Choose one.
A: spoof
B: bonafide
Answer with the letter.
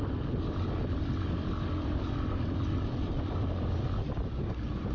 A